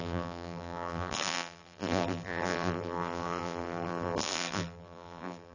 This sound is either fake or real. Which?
fake